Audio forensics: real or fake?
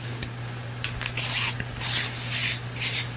fake